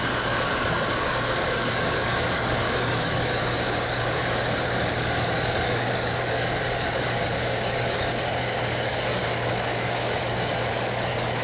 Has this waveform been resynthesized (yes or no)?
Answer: yes